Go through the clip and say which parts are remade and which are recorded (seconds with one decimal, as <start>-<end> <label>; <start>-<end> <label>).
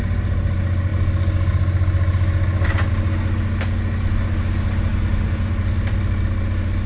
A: 0.0-6.9 recorded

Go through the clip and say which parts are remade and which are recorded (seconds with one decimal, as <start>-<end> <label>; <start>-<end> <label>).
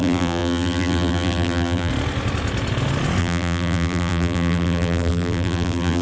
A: 0.0-1.9 remade; 1.9-3.2 recorded; 3.2-6.0 remade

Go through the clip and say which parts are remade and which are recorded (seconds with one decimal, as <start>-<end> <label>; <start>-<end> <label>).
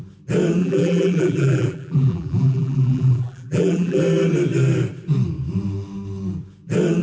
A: 0.0-0.6 recorded; 0.6-4.0 remade; 4.0-7.0 recorded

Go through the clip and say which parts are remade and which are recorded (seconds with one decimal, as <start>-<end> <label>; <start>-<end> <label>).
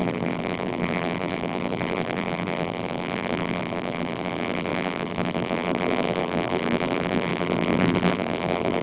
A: 0.0-8.8 remade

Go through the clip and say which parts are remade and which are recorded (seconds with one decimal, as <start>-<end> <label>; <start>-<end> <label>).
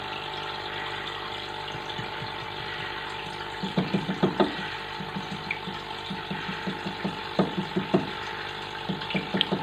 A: 0.0-7.2 remade; 7.2-8.3 recorded; 8.3-9.6 remade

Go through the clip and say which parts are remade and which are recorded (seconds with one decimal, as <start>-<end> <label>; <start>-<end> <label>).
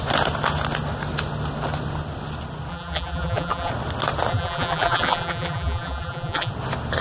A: 0.0-2.7 recorded; 2.7-3.7 remade; 3.7-4.3 recorded; 4.3-6.5 remade; 6.5-7.0 recorded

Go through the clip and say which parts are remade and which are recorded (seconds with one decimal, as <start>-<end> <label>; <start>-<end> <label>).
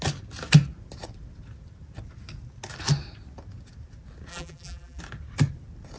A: 0.0-4.3 recorded; 4.3-5.0 remade; 5.0-6.0 recorded